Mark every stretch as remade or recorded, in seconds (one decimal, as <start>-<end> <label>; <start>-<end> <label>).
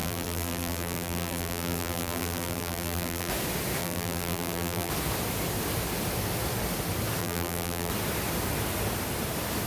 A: 0.0-3.3 remade; 3.3-3.8 recorded; 3.8-4.9 remade; 4.9-7.2 recorded; 7.2-7.9 remade; 7.9-9.7 recorded